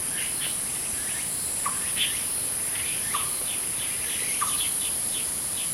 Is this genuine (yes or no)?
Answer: no